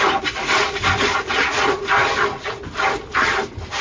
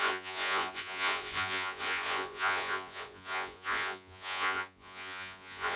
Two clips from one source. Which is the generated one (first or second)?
second